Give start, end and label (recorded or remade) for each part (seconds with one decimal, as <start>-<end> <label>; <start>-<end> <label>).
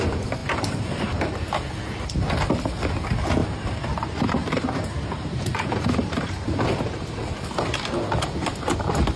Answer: 0.0-0.4 recorded; 0.4-1.4 remade; 1.4-3.4 recorded; 3.4-7.3 remade; 7.3-9.2 recorded